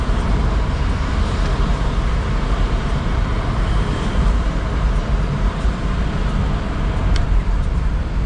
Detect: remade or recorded remade